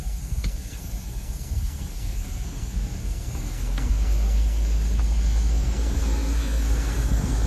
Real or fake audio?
fake